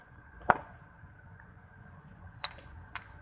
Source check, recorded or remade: remade